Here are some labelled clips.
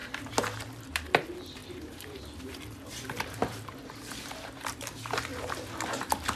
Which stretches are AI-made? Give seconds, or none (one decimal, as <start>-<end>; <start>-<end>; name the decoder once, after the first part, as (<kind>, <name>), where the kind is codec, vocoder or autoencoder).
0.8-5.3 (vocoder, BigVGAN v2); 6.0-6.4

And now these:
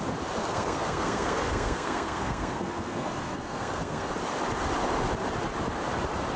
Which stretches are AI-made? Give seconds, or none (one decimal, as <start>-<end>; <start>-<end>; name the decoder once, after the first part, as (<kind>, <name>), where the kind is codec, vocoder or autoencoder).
0.4-4.1 (codec, SNAC)

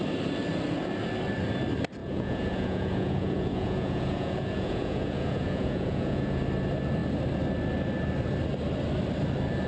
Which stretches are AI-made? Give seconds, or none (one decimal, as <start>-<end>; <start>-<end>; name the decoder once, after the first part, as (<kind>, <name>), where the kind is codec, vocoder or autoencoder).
2.0-6.4 (vocoder, Vocos)